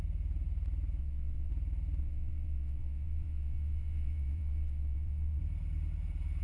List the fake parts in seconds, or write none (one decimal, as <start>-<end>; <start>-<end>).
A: 1.0-1.5; 2.0-5.4